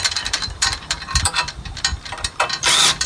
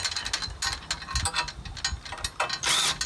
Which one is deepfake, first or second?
first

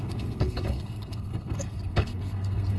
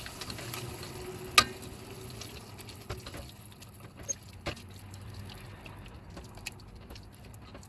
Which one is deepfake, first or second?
first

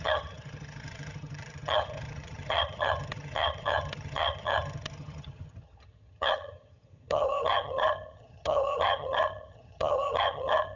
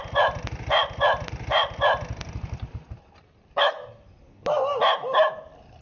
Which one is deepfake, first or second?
first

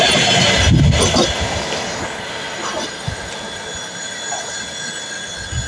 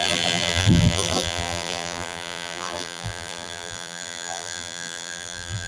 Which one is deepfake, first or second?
second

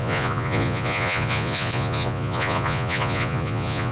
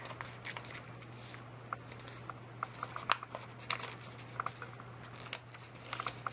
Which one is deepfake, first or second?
first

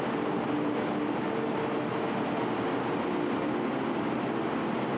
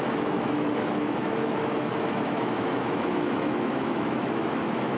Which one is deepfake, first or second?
second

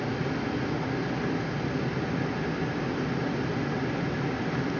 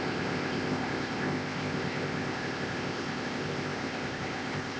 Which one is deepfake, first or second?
second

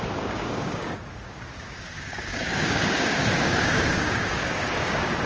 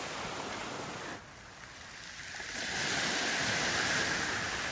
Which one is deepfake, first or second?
first